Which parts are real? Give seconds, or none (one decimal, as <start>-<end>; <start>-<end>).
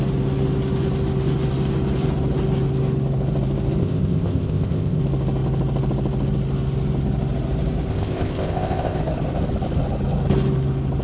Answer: 0.0-3.8; 5.0-7.9; 9.0-11.0